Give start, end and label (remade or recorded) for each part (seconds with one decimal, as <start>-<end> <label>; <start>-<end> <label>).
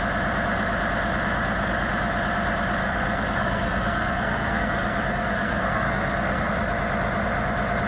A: 0.0-2.8 recorded; 2.8-6.5 remade; 6.5-7.9 recorded